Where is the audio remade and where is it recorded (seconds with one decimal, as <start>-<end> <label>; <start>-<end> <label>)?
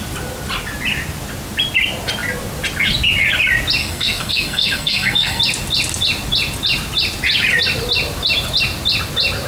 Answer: 0.0-3.8 recorded; 3.8-5.4 remade; 5.4-9.5 recorded